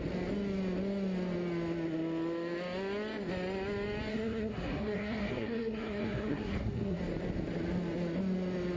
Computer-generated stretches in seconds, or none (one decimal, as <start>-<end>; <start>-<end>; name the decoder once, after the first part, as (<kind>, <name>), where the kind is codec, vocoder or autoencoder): 4.1-7.0 (codec, SNAC)

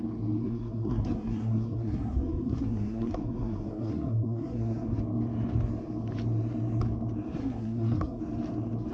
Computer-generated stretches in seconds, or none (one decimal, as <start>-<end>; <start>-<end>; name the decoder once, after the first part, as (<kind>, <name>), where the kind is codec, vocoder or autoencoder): 0.4-5.0 (codec, SNAC); 7.4-8.2